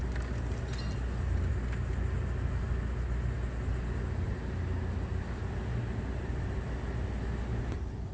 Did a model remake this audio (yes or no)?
no